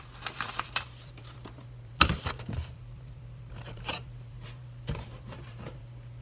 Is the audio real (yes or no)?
no